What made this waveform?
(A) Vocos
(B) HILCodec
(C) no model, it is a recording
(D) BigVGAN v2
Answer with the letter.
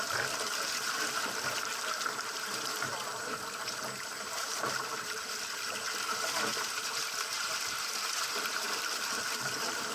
D